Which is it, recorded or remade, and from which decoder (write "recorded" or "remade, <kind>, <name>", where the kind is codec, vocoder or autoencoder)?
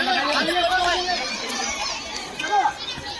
remade, vocoder, BigVGAN v2